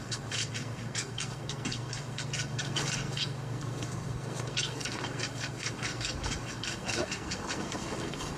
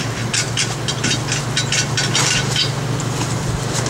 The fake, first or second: first